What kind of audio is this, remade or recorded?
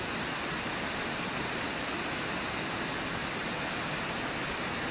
recorded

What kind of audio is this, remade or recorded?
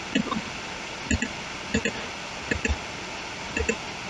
recorded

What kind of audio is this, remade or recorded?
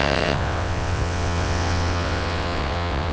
remade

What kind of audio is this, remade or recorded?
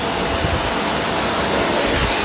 recorded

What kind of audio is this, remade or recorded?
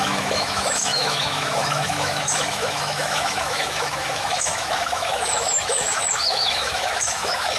remade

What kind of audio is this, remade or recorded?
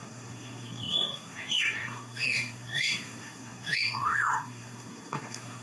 remade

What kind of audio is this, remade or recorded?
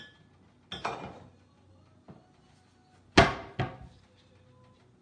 recorded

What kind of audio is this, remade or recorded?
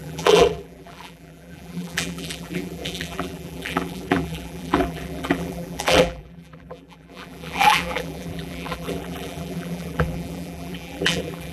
remade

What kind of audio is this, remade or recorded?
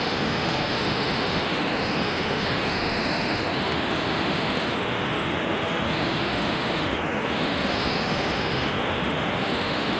remade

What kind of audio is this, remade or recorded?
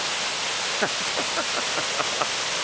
recorded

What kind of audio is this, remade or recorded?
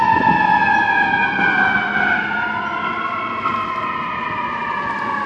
recorded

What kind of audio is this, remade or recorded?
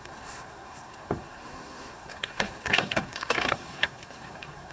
remade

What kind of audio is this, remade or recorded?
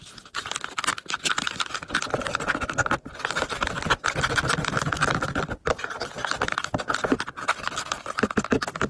recorded